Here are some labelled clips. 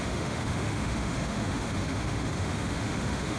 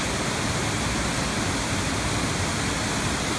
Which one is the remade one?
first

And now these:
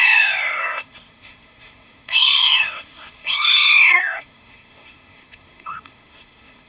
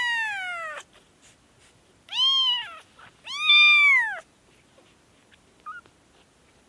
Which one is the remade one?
first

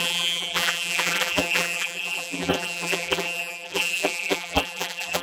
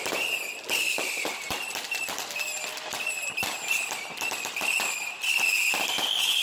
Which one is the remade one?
first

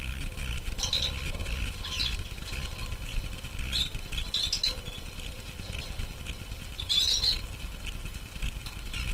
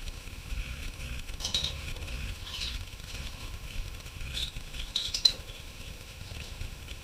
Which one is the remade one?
second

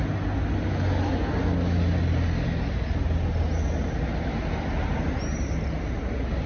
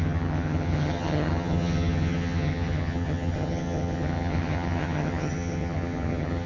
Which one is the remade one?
second